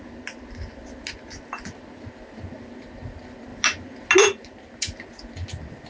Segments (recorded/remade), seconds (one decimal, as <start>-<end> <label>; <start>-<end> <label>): 0.0-5.9 recorded